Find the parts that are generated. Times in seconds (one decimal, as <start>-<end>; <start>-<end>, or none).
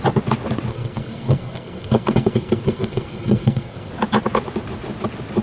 0.7-3.9